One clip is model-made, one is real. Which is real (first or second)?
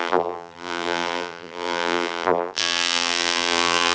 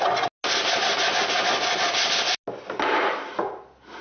second